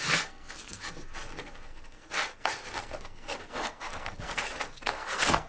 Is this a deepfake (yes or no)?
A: yes